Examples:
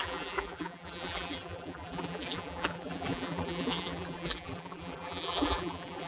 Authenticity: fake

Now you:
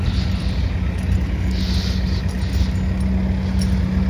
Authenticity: real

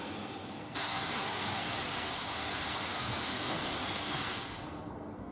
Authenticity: fake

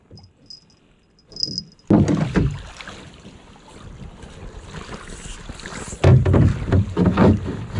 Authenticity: real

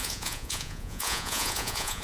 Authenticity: fake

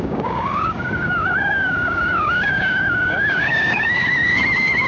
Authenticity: fake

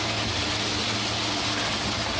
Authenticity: real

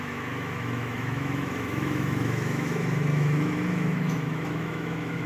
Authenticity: fake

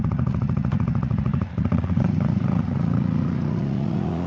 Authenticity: fake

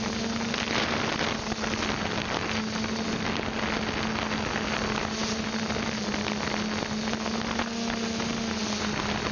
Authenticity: real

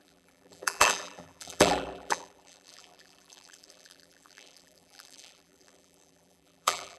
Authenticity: fake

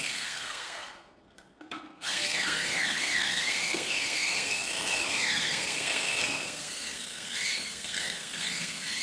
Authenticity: fake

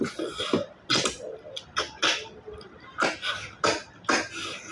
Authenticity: real